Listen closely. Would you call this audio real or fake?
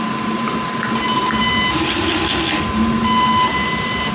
real